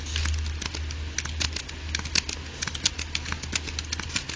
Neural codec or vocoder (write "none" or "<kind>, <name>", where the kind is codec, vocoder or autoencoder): none